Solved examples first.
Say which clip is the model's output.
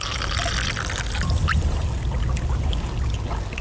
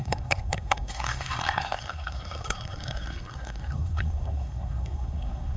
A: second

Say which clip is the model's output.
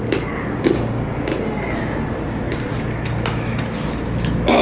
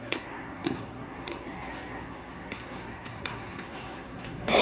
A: second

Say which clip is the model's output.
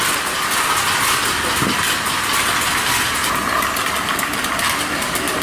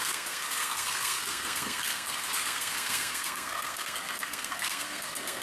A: second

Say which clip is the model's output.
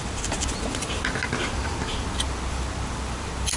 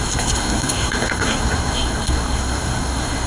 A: second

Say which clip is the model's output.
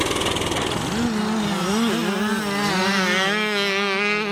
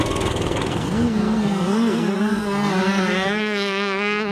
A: second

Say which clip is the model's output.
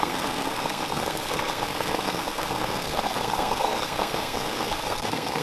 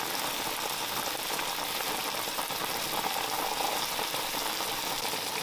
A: first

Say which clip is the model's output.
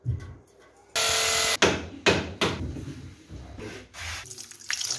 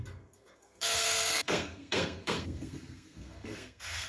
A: second